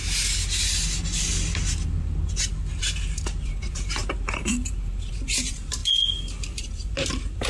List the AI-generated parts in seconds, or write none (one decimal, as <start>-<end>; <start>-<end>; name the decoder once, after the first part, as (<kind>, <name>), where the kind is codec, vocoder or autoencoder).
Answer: 2.8-5.8 (vocoder, BigVGAN v2); 6.6-7.5

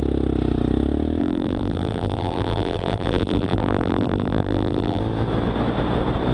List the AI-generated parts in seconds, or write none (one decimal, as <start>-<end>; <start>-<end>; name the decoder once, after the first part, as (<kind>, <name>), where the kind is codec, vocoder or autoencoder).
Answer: 1.2-5.0 (vocoder, BigVGAN v2)